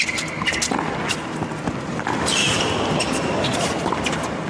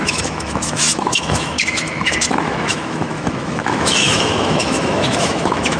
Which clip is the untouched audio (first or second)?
first